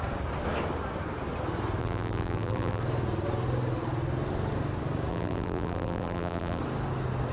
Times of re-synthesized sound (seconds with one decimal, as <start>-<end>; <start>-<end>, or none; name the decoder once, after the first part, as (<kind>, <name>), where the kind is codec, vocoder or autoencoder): 1.8-2.8 (vocoder, BigVGAN v2); 5.1-6.6